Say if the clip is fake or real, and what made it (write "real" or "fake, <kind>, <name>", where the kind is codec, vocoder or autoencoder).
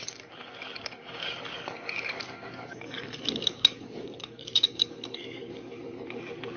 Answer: fake, codec, DAC